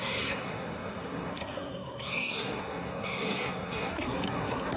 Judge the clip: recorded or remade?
remade